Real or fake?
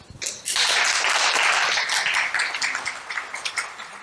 real